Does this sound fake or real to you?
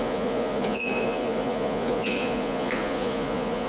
fake